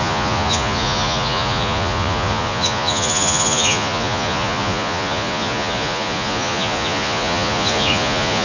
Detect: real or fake fake